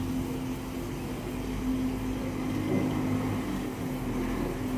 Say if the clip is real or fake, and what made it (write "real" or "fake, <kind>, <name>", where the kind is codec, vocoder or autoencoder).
real